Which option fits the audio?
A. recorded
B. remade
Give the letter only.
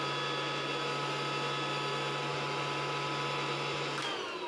A